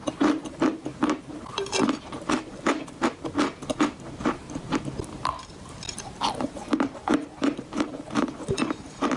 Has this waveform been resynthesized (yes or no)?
yes